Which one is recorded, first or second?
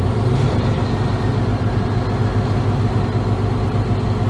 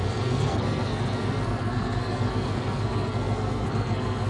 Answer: first